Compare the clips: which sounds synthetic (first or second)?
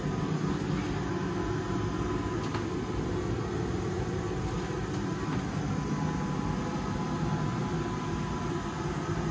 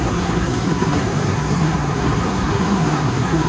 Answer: second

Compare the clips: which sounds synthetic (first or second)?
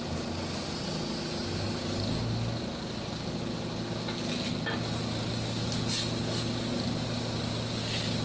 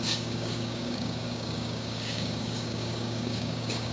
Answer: second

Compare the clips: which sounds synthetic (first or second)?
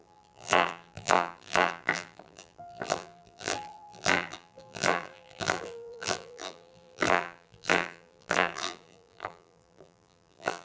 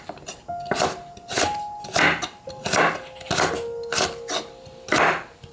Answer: first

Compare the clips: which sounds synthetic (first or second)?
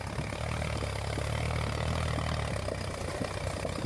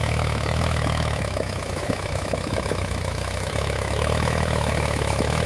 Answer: second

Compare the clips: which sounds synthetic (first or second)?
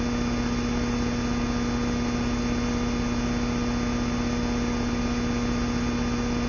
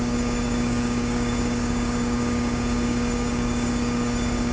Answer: second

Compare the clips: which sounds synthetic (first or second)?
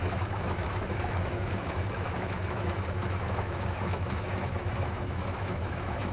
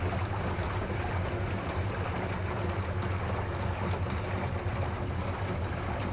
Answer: first